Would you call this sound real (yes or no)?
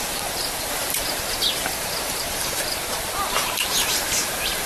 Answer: no